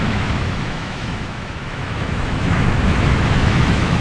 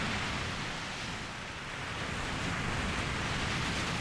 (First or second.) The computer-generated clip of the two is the first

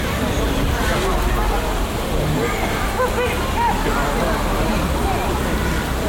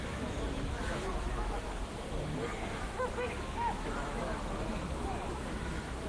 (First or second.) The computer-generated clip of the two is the second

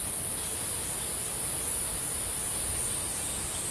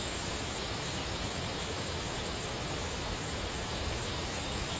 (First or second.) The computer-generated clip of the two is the second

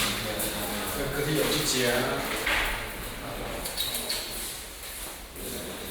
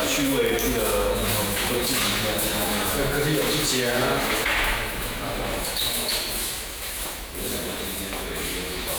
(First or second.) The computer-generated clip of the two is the second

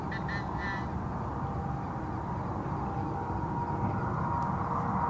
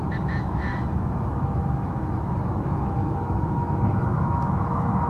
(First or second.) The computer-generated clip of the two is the second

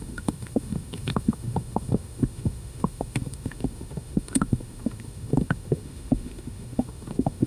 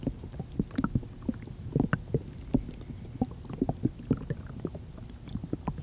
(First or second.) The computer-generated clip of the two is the first